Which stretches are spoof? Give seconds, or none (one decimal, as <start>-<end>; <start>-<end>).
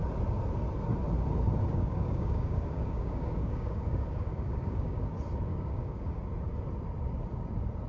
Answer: 1.7-5.1; 5.5-6.2